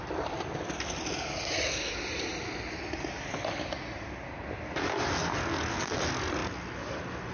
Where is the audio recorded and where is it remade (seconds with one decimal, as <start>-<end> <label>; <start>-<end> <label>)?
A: 0.0-7.3 recorded